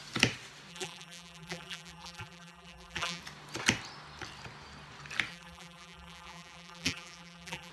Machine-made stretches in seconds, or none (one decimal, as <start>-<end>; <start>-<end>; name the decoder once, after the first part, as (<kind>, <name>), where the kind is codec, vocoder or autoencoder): 0.7-3.2 (vocoder, BigVGAN v2); 5.3-7.7